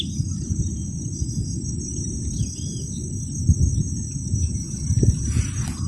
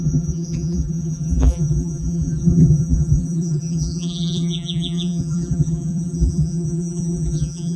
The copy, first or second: second